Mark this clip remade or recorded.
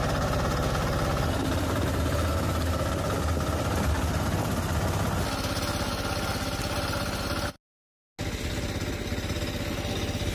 recorded